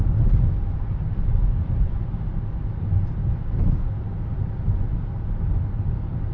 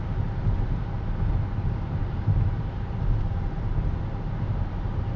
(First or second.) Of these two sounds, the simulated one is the first